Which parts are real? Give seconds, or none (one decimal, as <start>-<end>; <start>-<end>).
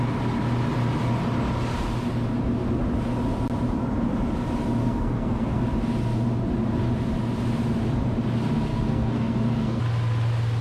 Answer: 0.0-4.8; 5.6-8.7; 9.8-10.6